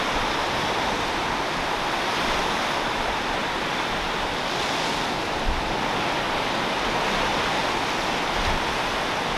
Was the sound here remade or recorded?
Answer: recorded